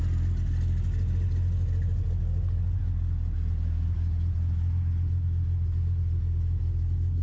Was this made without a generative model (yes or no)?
yes